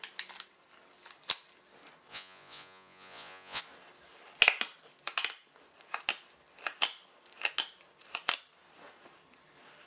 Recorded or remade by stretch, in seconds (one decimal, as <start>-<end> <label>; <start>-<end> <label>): 0.0-2.1 recorded; 2.1-3.6 remade; 3.6-9.9 recorded